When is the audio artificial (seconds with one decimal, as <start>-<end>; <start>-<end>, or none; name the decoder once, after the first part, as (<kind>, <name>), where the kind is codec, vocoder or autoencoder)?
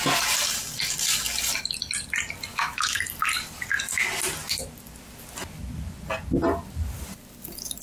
2.5-3.0 (autoencoder, DAC-VAE)